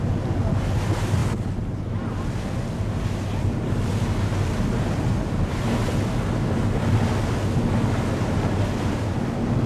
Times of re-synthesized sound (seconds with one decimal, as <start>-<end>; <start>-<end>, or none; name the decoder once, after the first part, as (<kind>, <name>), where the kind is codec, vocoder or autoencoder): none